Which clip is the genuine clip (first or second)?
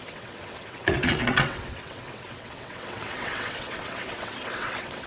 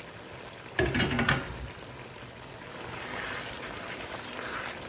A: second